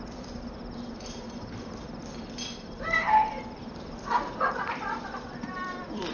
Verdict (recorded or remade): remade